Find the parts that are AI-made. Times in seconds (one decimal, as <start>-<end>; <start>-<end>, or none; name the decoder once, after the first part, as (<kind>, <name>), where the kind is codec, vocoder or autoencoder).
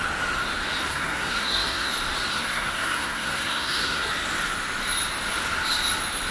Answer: 0.9-1.9 (codec, SNAC); 2.3-4.1